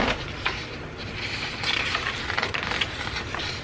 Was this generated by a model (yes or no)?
no